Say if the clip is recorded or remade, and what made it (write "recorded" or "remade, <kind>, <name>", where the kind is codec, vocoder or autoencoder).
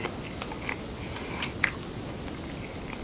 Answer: recorded